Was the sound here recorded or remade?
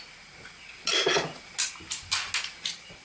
recorded